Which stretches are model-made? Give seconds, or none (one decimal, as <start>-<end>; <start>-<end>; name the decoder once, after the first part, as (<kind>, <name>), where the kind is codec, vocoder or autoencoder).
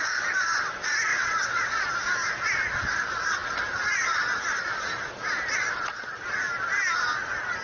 1.1-1.9 (vocoder, WaveNeXt)